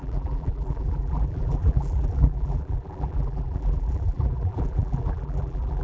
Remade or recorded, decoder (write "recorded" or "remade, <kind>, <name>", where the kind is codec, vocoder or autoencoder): remade, vocoder, BigVGAN v2